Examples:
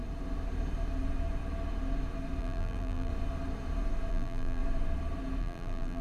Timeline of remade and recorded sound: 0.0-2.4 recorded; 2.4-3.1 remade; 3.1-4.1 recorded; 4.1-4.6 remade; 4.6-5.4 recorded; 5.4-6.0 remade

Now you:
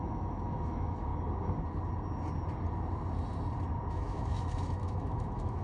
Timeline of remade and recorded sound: 0.0-1.1 remade; 1.1-3.9 recorded; 3.9-5.6 remade